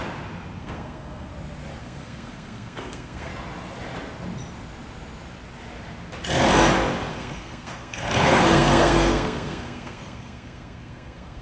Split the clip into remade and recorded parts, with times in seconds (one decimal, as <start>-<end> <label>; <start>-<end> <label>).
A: 0.0-0.6 recorded; 0.6-1.3 remade; 1.3-1.8 recorded; 1.8-3.3 remade; 3.3-7.1 recorded; 7.1-11.4 remade